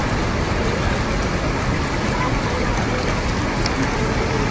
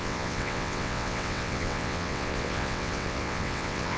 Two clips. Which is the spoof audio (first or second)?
second